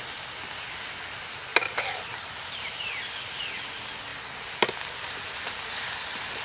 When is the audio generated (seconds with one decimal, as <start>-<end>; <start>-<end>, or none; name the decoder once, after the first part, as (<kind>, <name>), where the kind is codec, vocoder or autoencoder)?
none